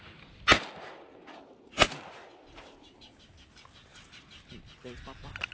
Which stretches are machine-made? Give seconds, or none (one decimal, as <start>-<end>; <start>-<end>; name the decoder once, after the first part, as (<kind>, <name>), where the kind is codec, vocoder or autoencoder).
none